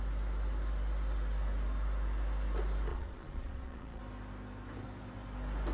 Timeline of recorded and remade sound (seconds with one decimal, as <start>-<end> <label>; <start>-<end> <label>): 0.0-2.9 recorded; 2.9-4.0 remade; 4.0-5.7 recorded